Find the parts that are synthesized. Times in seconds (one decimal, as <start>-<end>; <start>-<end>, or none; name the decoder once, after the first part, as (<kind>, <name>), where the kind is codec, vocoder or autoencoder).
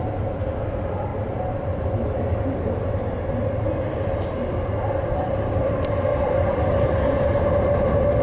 6.1-6.7 (vocoder, BigVGAN v2)